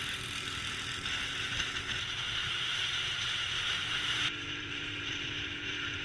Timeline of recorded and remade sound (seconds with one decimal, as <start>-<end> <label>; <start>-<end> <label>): 0.0-2.4 recorded; 2.4-6.0 remade